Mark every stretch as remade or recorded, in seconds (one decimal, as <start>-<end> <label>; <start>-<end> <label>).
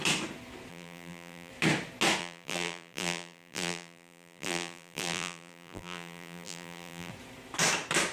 0.0-0.7 recorded; 0.7-1.5 remade; 1.5-2.2 recorded; 2.2-7.1 remade; 7.1-8.1 recorded